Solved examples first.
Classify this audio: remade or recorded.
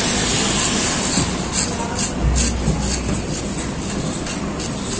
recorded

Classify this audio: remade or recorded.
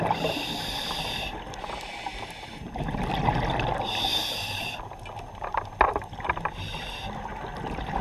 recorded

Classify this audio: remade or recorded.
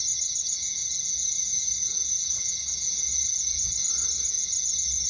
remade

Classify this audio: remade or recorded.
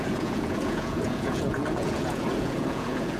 remade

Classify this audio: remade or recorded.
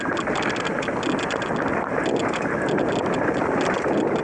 recorded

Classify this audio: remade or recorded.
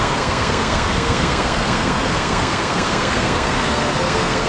remade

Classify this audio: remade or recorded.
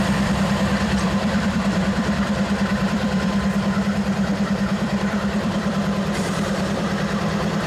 remade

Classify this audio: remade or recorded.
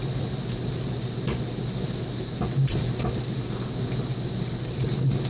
recorded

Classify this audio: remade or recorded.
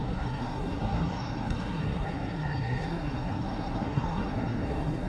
remade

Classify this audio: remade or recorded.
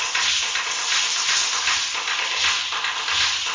recorded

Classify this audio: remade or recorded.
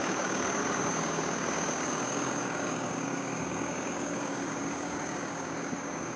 remade